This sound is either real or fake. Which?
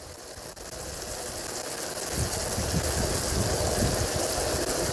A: real